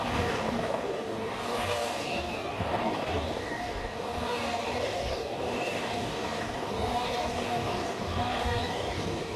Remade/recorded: remade